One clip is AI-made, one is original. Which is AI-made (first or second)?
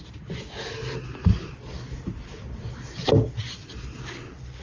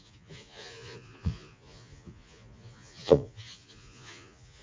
second